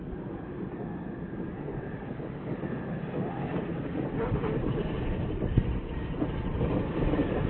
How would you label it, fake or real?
real